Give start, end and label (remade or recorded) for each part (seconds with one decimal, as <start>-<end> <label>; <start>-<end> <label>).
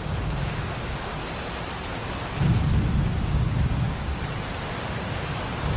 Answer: 0.0-1.2 remade; 1.2-3.1 recorded; 3.1-4.1 remade; 4.1-5.0 recorded; 5.0-5.8 remade